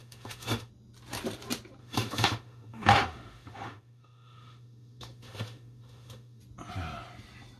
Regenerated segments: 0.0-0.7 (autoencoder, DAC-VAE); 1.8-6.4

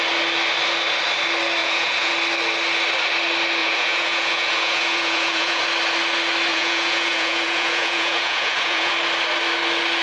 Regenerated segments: 1.6-2.1 (vocoder, Vocos); 3.6-5.6; 6.5-8.9

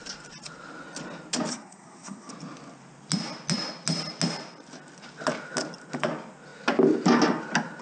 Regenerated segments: 1.5-2.3 (codec, SNAC)

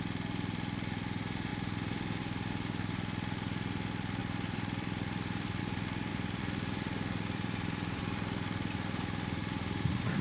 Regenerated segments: 4.2-5.6 (vocoder, BigVGAN v2); 6.1-8.0